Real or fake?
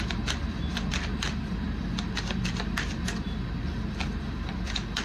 real